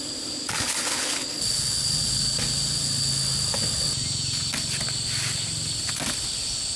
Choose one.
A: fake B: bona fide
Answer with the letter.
B